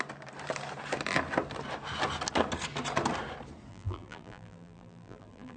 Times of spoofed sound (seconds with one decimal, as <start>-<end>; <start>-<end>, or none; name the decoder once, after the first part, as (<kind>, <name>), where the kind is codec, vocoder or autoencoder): 3.7-5.6 (vocoder, BigVGAN v2)